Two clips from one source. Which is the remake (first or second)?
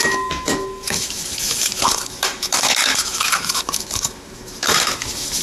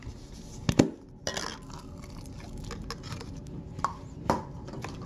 first